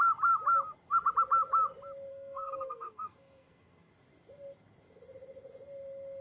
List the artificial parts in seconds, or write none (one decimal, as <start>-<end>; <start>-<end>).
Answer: 2.1-3.9